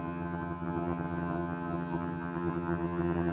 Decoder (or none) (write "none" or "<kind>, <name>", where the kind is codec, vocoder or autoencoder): vocoder, HiFi-GAN